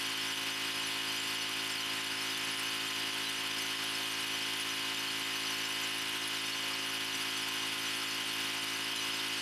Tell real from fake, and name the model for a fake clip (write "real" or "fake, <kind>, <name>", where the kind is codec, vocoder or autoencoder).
real